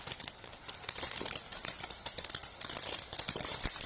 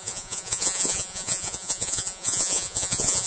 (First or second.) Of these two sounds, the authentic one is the first